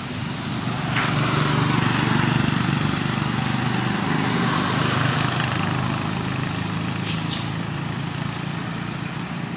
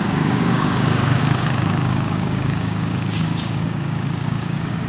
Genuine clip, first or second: first